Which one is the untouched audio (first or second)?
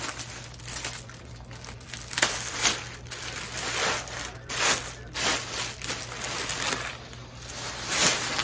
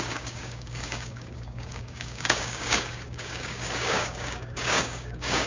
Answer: first